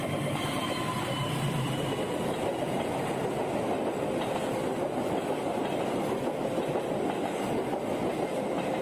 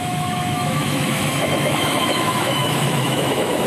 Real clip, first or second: first